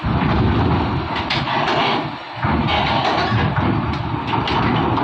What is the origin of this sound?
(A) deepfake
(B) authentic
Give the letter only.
B